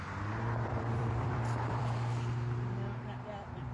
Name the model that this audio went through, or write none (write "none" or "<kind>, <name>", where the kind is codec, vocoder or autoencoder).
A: vocoder, BigVGAN v2